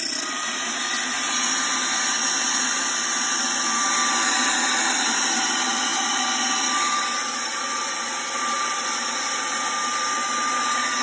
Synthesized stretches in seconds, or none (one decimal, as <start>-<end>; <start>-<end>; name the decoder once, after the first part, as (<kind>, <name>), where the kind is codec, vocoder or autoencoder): none